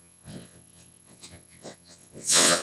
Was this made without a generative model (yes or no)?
no